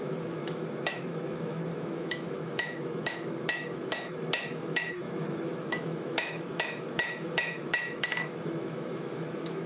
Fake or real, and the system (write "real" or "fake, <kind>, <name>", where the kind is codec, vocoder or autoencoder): fake, autoencoder, DAC-VAE